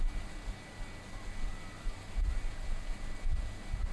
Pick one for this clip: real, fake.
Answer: real